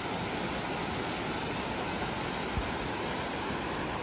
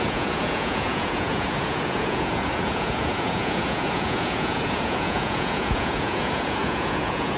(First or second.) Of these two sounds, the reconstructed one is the second